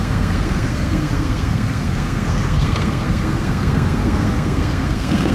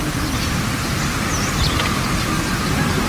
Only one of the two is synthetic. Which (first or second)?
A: first